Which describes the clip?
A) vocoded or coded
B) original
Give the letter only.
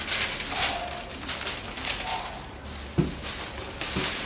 B